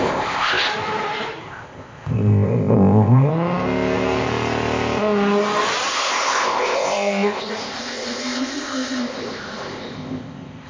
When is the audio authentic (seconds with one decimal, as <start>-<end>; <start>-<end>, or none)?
0.7-1.4; 3.3-5.9